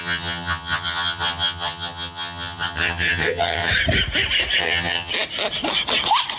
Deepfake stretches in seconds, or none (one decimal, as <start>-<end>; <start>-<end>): 0.0-3.7; 4.6-5.1